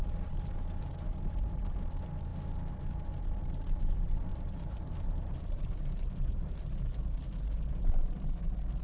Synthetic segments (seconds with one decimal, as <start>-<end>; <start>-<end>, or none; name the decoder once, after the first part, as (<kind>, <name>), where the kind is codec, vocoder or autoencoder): 4.3-7.4 (vocoder, BigVGAN v2)